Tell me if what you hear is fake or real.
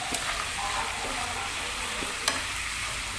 real